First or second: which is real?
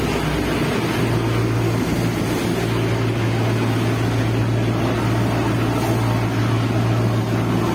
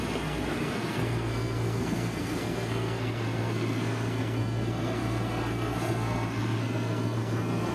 first